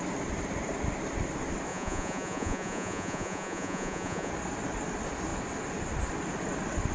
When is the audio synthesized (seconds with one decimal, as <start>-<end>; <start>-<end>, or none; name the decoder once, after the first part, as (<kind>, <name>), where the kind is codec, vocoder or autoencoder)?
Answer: 1.7-4.3 (vocoder, Vocos)